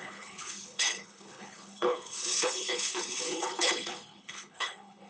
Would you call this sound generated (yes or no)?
yes